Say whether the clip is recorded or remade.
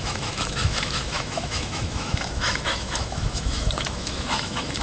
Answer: remade